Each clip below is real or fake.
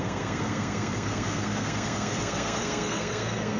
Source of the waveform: fake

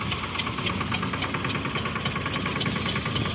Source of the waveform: real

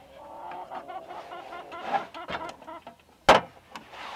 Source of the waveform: real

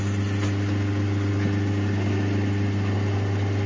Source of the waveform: real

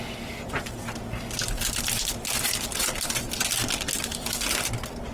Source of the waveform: real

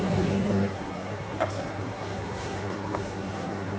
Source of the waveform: fake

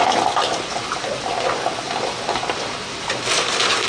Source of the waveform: real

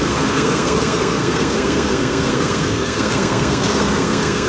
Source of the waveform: fake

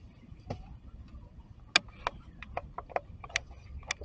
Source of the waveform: real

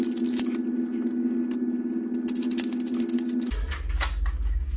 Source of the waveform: real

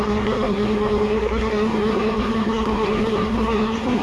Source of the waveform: fake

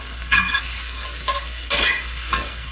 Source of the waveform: fake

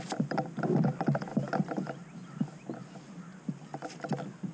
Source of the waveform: real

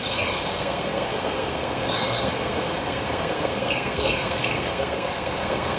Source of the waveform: fake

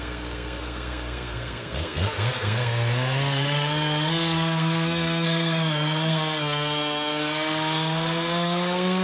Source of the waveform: fake